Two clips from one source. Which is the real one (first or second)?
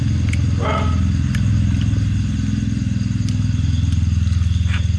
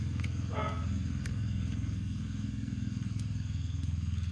first